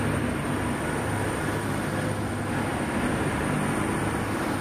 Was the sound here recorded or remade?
recorded